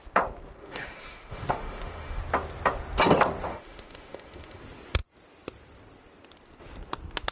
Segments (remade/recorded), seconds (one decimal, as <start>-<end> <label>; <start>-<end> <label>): 0.0-0.6 recorded; 0.6-2.2 remade; 2.2-3.5 recorded; 3.5-4.6 remade; 4.6-7.3 recorded